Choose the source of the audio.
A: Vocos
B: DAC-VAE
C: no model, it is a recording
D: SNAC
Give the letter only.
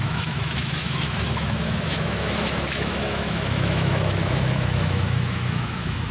B